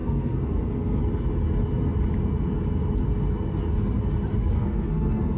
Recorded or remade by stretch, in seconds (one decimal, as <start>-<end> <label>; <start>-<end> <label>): 0.0-1.0 remade; 1.0-4.4 recorded; 4.4-5.4 remade